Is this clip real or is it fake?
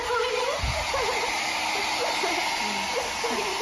real